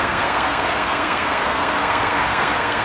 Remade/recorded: remade